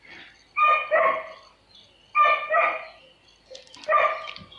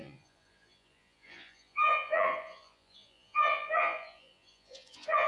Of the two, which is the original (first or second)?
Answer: first